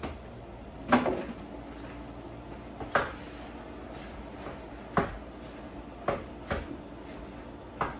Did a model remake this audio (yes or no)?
no